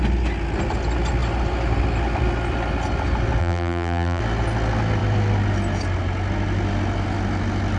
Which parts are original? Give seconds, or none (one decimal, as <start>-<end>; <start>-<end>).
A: 0.0-3.4; 4.2-7.8